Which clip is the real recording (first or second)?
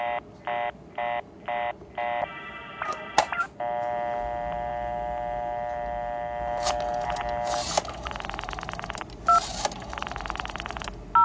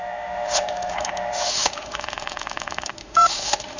first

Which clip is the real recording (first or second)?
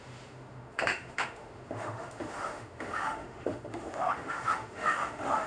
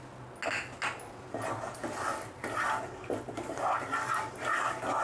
second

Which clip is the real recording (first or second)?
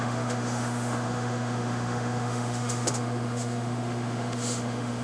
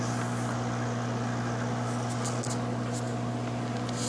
second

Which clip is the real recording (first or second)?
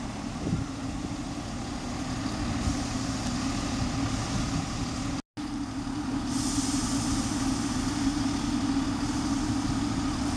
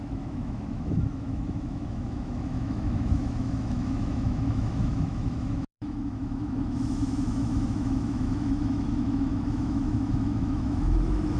first